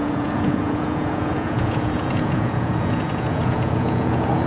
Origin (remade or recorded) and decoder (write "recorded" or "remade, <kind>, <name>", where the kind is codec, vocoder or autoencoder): remade, vocoder, Vocos